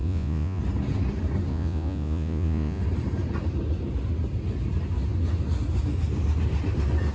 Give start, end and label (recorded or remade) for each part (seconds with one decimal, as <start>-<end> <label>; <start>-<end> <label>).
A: 0.0-0.6 remade; 0.6-1.5 recorded; 1.5-2.8 remade; 2.8-7.1 recorded